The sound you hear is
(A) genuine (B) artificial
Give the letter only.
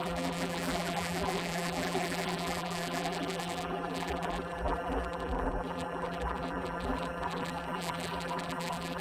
B